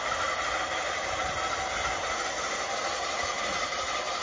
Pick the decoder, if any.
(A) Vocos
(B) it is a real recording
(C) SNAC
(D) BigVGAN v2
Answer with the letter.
B